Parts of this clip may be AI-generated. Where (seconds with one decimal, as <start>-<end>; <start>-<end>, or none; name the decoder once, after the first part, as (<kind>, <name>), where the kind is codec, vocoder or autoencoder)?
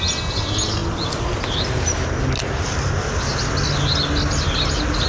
none